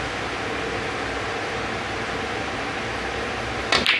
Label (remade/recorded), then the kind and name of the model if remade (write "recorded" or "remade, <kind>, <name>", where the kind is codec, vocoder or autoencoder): recorded